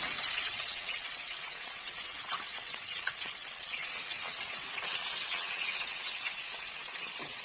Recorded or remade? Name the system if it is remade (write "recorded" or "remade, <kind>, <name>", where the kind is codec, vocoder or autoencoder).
remade, vocoder, WaveNeXt